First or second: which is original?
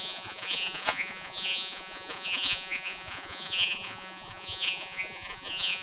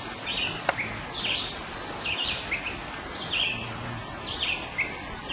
second